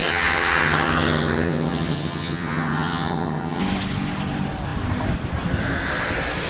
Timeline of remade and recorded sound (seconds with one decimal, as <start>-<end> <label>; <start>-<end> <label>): 0.0-3.6 remade; 3.6-6.5 recorded